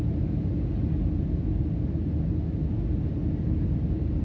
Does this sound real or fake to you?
real